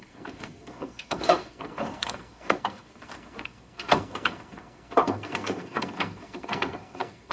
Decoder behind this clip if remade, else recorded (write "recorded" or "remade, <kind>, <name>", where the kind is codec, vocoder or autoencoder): remade, codec, SNAC